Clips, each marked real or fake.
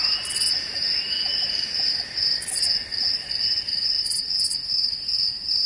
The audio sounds real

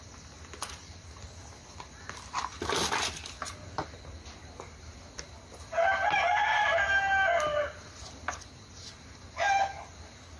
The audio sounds real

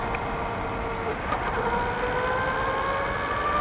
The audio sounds real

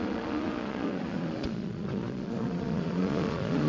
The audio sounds fake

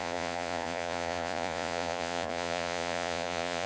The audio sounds fake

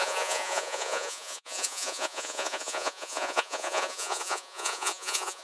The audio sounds fake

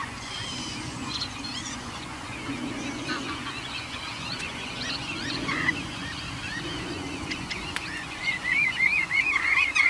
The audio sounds fake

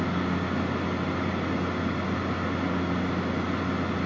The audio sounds real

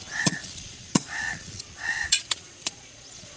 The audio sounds fake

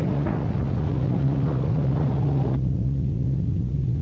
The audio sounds fake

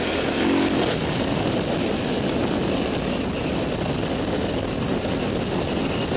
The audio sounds real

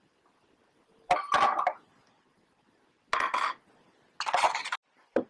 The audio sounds real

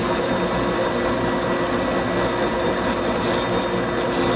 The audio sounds real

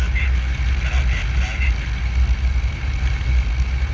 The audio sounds real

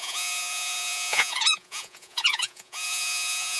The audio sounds fake